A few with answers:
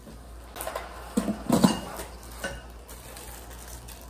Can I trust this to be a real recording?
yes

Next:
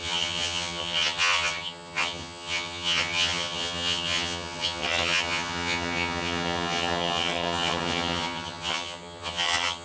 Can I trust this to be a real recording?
no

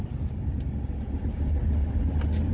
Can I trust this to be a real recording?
yes